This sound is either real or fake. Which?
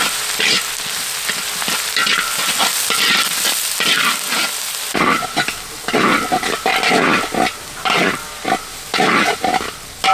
real